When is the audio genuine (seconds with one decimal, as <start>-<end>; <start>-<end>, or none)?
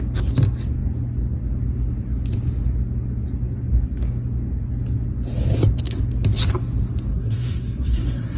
0.0-7.1